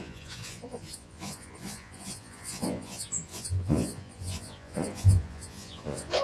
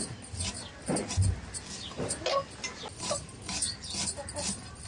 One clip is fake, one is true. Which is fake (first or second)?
first